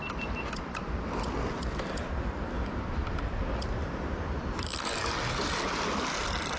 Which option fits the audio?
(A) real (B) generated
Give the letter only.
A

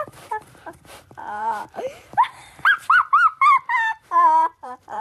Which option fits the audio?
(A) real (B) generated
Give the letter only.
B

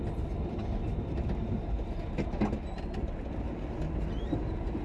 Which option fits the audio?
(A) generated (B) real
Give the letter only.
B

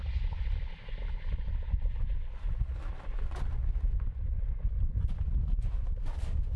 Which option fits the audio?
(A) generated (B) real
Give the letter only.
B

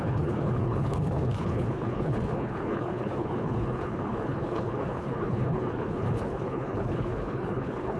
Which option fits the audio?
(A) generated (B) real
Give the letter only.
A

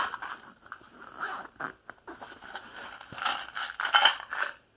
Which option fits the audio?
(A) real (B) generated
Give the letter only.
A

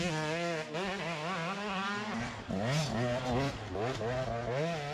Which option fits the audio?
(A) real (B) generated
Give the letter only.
A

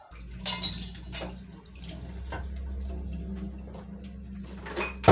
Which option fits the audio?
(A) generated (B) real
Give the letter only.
B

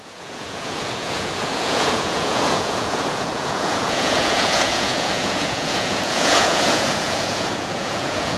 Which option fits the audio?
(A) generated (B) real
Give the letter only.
A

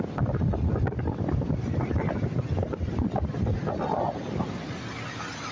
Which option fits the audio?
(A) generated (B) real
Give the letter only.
B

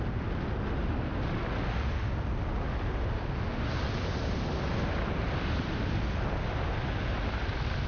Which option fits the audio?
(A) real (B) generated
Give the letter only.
A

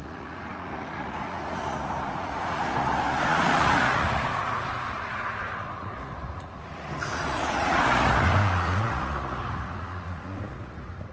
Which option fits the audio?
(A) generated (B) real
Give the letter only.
A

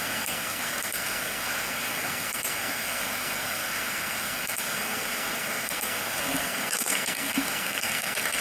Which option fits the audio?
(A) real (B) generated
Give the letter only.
B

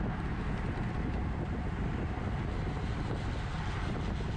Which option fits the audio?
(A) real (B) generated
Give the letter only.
A